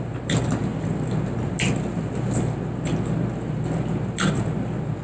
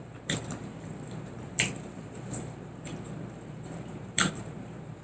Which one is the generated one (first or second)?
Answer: second